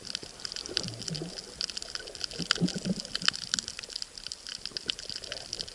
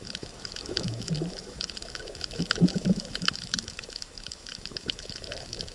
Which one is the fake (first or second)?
second